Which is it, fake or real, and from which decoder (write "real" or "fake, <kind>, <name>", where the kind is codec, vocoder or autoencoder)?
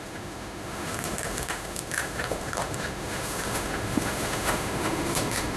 fake, autoencoder, DAC-VAE